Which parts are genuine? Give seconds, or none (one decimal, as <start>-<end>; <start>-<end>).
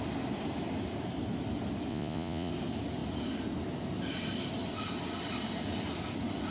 0.0-1.9; 2.5-6.5